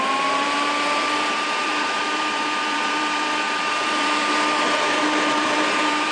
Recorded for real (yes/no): no